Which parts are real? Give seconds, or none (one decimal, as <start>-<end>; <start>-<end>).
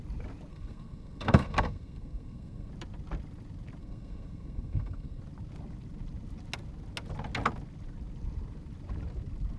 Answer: 0.0-0.5; 2.7-3.8; 5.2-9.6